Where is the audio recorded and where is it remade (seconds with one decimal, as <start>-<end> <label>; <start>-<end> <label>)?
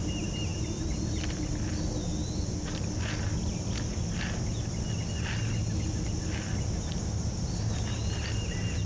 0.0-2.1 recorded; 2.1-3.2 remade; 3.2-8.9 recorded